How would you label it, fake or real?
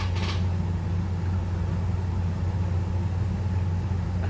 real